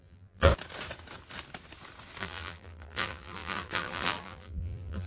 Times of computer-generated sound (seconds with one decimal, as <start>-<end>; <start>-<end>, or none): 0.0-0.5; 2.2-5.1